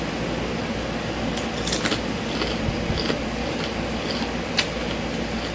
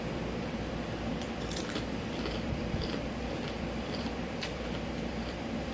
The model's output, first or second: second